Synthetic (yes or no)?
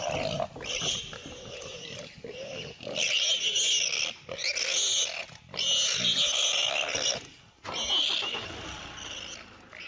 no